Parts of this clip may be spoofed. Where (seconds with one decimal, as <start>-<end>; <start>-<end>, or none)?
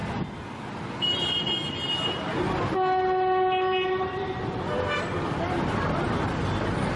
none